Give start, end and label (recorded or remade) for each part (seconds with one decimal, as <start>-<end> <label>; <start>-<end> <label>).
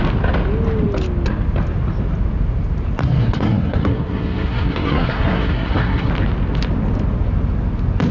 0.0-3.0 recorded; 3.0-6.1 remade; 6.1-8.1 recorded